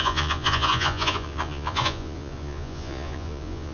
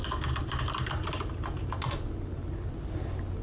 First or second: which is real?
second